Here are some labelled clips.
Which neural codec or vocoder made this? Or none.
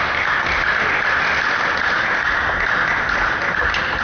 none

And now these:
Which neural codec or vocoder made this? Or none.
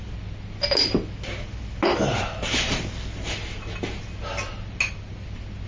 none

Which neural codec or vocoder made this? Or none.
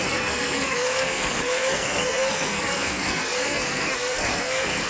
codec, SNAC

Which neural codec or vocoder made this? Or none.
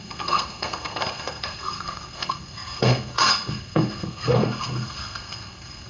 codec, SNAC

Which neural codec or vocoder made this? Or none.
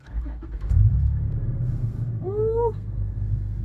codec, SNAC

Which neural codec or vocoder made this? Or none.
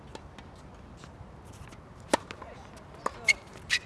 none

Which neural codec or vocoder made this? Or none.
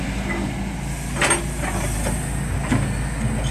none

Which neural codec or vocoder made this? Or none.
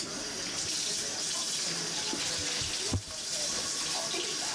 none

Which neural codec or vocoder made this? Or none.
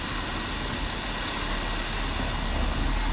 none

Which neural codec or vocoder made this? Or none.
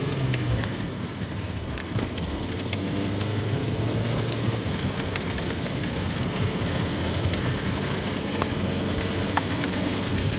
codec, SNAC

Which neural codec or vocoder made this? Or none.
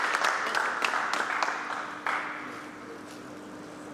none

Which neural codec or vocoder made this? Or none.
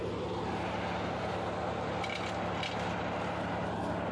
none